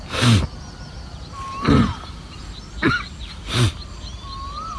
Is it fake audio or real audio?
real